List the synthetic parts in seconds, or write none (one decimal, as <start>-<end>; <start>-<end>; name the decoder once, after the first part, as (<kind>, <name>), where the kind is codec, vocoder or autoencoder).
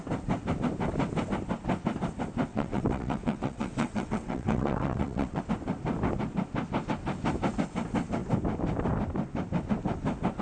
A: 2.5-5.4 (vocoder, WaveNeXt)